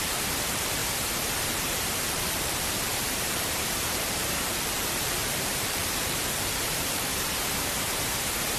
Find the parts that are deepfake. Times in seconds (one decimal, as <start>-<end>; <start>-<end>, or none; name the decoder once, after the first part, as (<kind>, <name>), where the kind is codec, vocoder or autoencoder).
0.0-0.8 (vocoder, BigVGAN v2); 1.5-7.1